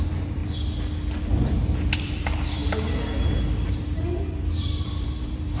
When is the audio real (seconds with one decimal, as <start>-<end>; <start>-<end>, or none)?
0.4-2.0; 2.6-3.7